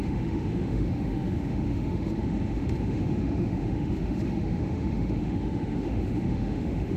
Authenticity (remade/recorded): remade